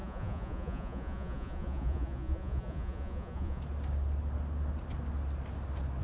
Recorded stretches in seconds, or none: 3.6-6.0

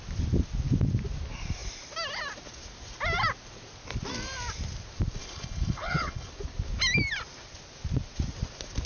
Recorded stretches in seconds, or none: 0.0-5.2; 6.3-8.9

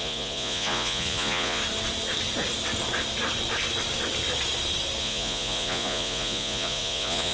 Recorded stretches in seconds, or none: 1.6-5.0

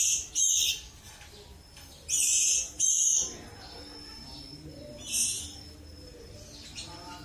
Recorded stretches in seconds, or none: 0.0-2.3; 2.9-7.2

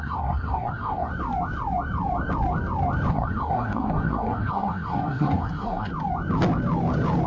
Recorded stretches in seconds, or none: 1.1-3.1; 5.9-7.3

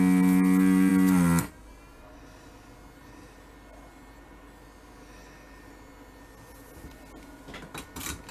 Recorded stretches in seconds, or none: 0.0-8.3